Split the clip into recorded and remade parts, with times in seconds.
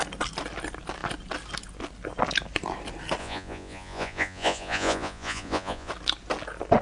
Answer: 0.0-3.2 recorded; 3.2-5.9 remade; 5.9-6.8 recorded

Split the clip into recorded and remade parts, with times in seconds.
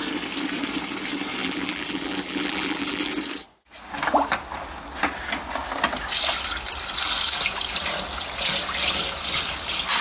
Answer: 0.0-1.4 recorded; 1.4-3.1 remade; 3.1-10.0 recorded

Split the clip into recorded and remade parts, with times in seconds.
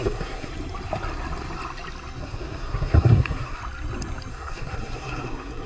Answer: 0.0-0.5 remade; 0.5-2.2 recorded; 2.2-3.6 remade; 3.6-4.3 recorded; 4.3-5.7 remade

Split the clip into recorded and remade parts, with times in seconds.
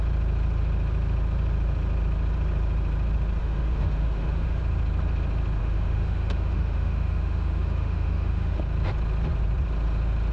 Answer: 0.0-3.4 recorded; 3.4-4.6 remade; 4.6-5.6 recorded; 5.6-8.6 remade; 8.6-10.3 recorded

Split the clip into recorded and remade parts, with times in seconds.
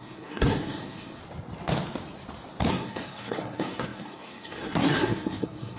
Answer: 0.0-1.2 remade; 1.2-2.7 recorded; 2.7-5.8 remade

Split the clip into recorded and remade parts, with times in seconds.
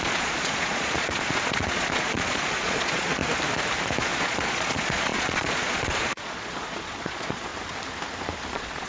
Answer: 0.0-3.2 remade; 3.2-4.0 recorded; 4.0-7.5 remade; 7.5-8.5 recorded; 8.5-8.9 remade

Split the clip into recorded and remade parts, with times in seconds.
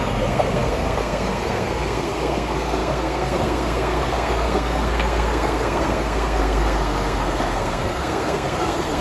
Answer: 0.0-9.0 remade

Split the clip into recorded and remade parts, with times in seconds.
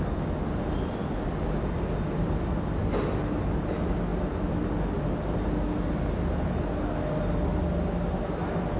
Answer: 0.0-8.8 recorded